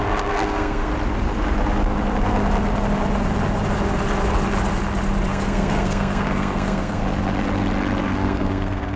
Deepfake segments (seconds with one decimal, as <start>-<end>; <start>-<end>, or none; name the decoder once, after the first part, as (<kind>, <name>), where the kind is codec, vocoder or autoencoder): 0.0-0.9 (codec, SNAC); 5.3-7.0; 8.0-9.0